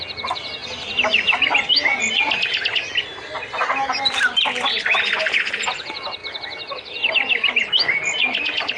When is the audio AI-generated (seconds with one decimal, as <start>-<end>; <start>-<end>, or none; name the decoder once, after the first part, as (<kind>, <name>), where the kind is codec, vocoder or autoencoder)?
none

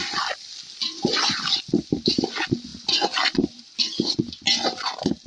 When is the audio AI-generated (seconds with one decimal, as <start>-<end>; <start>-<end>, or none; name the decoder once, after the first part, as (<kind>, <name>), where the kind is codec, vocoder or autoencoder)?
none